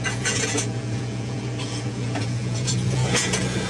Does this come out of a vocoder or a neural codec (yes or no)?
yes